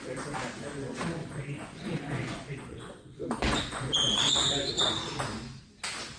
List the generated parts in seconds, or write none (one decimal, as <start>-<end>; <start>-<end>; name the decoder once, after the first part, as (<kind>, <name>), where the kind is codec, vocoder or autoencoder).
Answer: 1.2-4.9 (vocoder, Vocos)